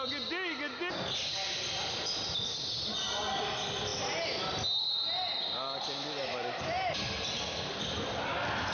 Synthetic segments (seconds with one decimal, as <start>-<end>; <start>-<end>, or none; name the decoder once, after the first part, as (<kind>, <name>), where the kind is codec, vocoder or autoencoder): none